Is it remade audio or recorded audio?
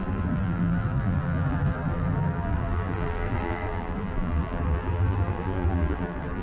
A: remade